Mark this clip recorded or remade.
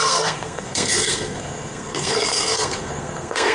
remade